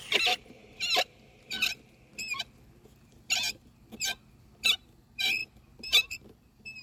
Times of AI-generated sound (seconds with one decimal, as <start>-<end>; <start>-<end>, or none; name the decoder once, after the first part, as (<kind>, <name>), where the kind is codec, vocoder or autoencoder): none